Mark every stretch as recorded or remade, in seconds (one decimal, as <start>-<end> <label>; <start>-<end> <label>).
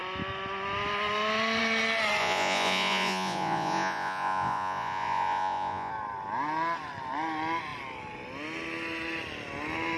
0.0-2.2 recorded; 2.2-5.9 remade; 5.9-10.0 recorded